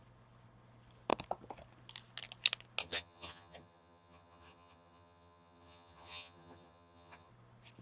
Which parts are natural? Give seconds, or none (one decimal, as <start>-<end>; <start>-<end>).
0.0-2.8; 7.3-7.8